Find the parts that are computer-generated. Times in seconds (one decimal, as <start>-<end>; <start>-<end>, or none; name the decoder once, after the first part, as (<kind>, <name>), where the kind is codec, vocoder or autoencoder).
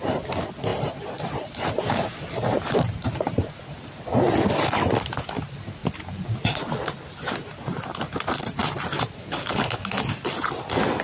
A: 0.7-3.6 (vocoder, BigVGAN v2); 5.8-6.8; 8.6-9.9